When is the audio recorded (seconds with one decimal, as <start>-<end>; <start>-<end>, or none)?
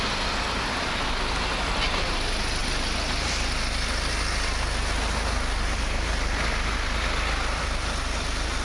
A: 0.0-8.6